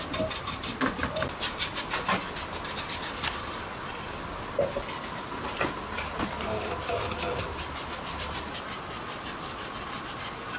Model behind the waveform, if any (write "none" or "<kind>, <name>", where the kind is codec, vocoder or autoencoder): none